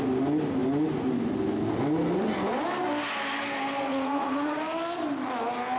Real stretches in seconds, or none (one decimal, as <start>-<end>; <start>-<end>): 0.0-3.9; 4.6-5.8

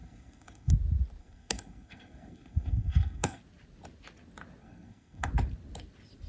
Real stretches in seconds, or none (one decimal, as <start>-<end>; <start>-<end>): 0.7-1.2; 3.4-4.6; 5.3-6.3

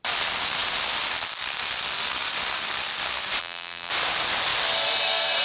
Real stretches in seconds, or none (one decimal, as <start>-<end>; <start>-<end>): 0.0-3.4; 3.9-5.4

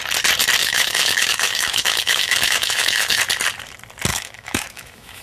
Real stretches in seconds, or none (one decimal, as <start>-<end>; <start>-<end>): 0.0-0.6; 3.2-4.1

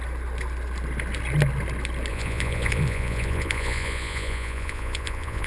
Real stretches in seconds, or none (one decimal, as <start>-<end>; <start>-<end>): 0.0-2.1

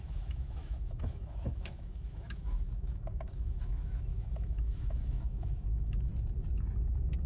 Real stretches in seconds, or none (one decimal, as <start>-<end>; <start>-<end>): 6.1-7.3

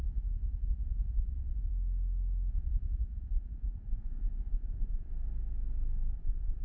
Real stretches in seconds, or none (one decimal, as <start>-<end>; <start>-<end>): 1.7-2.5; 5.1-6.1

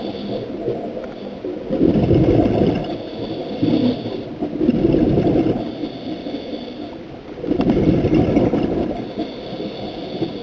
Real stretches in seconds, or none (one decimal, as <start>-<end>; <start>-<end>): 0.0-10.4